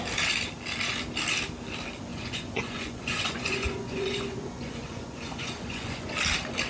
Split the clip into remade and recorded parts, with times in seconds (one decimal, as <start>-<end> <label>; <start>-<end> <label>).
0.0-2.1 recorded; 2.1-6.1 remade; 6.1-6.7 recorded